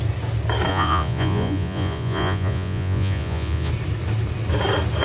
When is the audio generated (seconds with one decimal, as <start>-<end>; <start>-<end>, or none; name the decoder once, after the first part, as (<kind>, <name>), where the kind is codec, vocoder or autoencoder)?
0.7-3.7 (vocoder, Vocos)